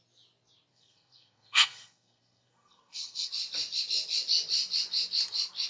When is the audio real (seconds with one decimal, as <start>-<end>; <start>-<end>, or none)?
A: 0.0-0.7; 3.3-5.7